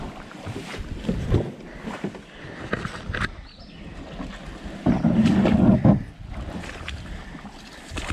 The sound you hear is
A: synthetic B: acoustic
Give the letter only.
B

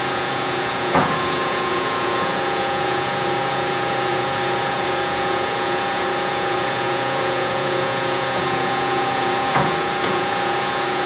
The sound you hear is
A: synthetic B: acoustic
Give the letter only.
A